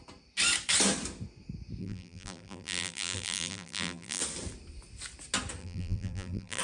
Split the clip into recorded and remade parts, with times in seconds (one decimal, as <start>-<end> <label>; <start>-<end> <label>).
0.0-1.8 recorded; 1.8-4.2 remade; 4.2-5.6 recorded; 5.6-6.6 remade